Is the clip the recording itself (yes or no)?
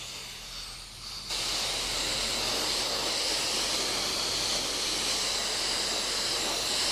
yes